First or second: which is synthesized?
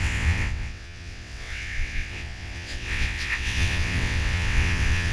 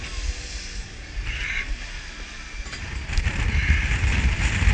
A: first